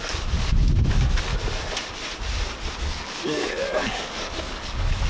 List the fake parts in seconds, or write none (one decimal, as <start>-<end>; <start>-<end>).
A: 0.0-1.3; 2.8-5.1